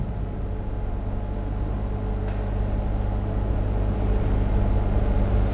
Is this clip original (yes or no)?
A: yes